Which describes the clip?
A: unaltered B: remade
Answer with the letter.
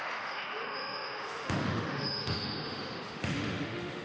B